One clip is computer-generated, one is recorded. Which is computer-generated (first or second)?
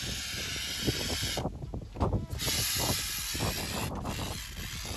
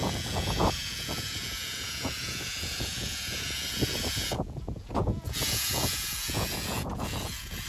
second